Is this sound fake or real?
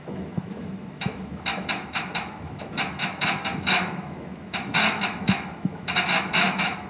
fake